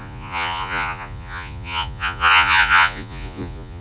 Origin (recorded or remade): remade